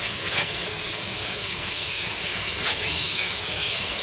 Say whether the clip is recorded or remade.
remade